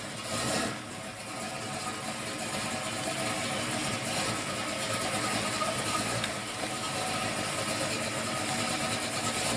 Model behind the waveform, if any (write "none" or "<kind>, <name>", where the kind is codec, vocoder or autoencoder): none